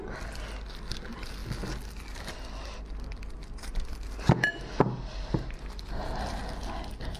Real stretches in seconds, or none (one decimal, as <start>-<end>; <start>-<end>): 0.0-7.2